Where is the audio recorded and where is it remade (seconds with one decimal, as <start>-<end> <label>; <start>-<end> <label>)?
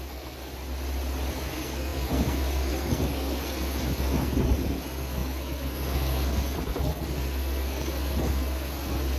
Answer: 0.0-0.5 remade; 0.5-1.3 recorded; 1.3-9.2 remade